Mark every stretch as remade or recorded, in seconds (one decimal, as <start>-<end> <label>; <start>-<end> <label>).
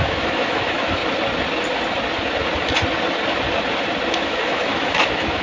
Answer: 0.0-1.0 remade; 1.0-4.2 recorded; 4.2-5.4 remade